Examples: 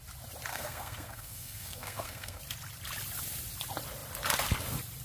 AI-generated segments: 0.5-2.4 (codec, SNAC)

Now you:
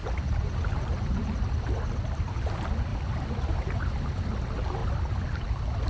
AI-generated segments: 0.0-1.4 (vocoder, BigVGAN v2); 2.9-4.2

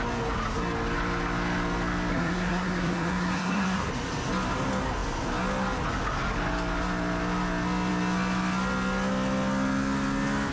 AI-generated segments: 2.1-3.9 (codec, SNAC)

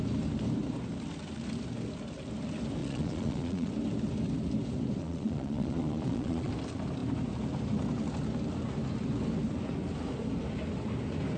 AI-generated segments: 2.8-3.7 (vocoder, Vocos); 5.0-6.5

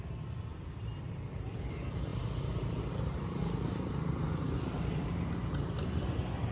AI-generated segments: 0.5-1.6 (vocoder, BigVGAN v2); 2.1-5.3

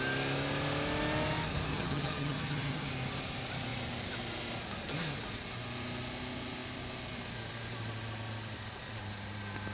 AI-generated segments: 1.7-2.9 (vocoder, HiFi-GAN)

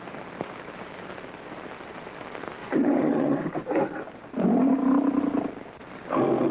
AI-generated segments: 2.6-3.4 (vocoder, WaveNeXt)

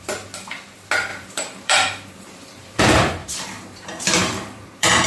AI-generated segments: 1.1-2.8 (vocoder, BigVGAN v2); 3.2-5.1